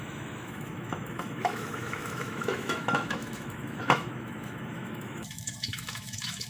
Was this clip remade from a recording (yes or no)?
yes